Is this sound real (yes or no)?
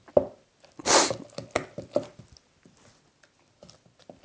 yes